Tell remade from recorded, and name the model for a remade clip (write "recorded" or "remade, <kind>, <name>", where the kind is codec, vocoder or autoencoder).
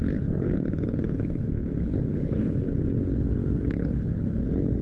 remade, codec, HILCodec